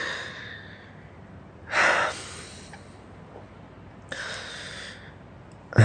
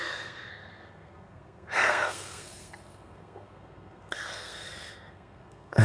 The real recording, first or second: first